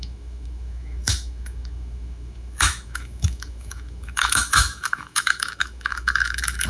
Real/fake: fake